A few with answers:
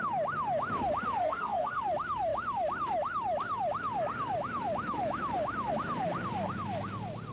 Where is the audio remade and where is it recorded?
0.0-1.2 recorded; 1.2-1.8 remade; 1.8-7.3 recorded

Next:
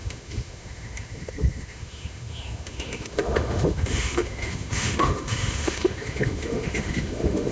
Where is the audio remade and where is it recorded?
0.0-7.5 remade

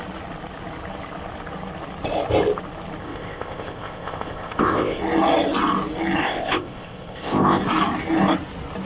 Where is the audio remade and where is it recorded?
0.0-3.0 recorded; 3.0-5.0 remade; 5.0-6.2 recorded; 6.2-7.6 remade; 7.6-8.8 recorded

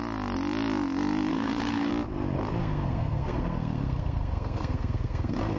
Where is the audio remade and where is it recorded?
0.0-1.3 recorded; 1.3-1.9 remade; 1.9-2.6 recorded; 2.6-5.6 remade

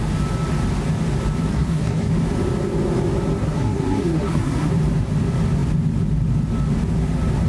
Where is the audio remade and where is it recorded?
0.0-1.5 recorded; 1.5-2.1 remade; 2.1-3.4 recorded; 3.4-4.7 remade; 4.7-7.5 recorded

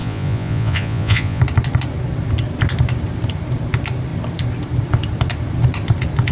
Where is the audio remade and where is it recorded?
0.0-1.4 remade; 1.4-6.3 recorded

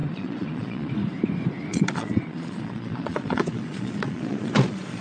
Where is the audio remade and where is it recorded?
0.0-0.9 remade; 0.9-1.7 recorded; 1.7-5.0 remade